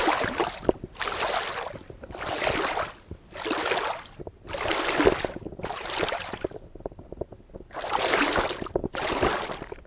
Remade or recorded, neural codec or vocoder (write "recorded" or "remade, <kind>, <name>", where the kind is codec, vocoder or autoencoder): recorded